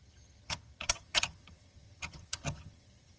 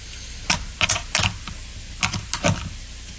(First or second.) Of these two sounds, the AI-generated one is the first